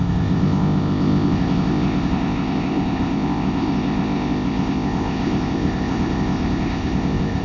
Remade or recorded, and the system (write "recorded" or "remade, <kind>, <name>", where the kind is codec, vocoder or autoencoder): remade, codec, ZipCodec